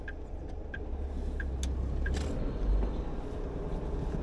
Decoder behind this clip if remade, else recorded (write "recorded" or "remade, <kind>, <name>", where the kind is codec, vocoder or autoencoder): recorded